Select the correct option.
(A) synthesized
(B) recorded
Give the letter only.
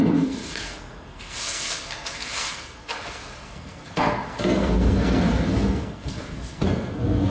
A